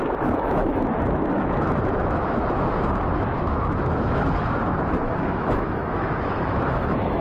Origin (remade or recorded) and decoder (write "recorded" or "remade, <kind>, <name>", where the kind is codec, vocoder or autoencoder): remade, autoencoder, DAC-VAE